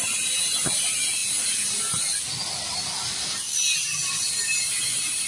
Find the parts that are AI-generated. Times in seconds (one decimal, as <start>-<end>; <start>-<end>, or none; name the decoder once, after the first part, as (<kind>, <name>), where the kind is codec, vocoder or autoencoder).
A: 0.0-1.2 (vocoder, BigVGAN v2); 4.4-5.3